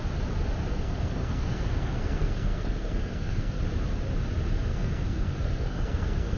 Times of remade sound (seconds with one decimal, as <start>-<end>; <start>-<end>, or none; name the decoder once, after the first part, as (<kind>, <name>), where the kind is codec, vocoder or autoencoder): 0.7-3.6 (codec, SNAC); 4.7-6.4